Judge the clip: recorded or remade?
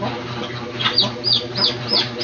recorded